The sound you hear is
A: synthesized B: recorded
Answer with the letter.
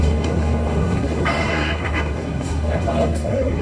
A